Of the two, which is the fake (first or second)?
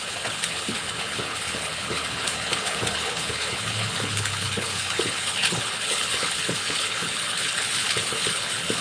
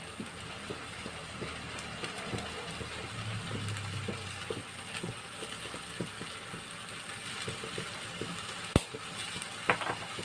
first